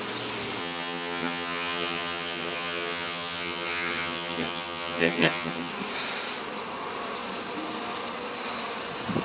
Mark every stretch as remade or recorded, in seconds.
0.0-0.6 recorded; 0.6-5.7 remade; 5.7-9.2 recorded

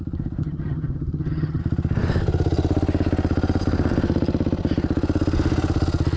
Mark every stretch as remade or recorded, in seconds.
0.0-0.4 recorded; 0.4-1.6 remade; 1.6-6.2 recorded

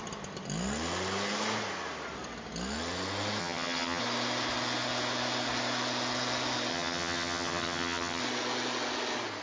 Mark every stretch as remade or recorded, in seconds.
0.0-3.4 recorded; 3.4-4.0 remade; 4.0-6.7 recorded; 6.7-8.2 remade; 8.2-9.4 recorded

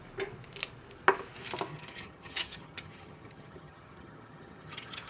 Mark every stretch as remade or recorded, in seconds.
0.0-1.7 recorded; 1.7-5.1 remade